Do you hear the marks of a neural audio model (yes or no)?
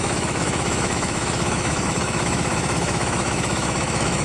yes